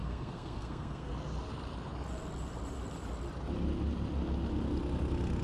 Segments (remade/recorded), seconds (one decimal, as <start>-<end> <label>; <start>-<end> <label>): 0.0-1.1 remade; 1.1-5.4 recorded